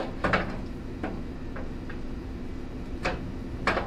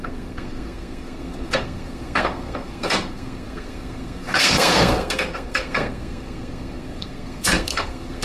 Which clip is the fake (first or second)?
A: second